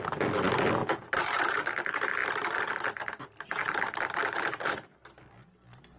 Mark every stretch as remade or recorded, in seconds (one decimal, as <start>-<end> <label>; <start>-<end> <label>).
0.0-0.8 recorded; 0.8-1.4 remade; 1.4-6.0 recorded